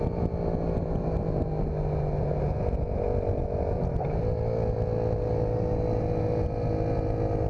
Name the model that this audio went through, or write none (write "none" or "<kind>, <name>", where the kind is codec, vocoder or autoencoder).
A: none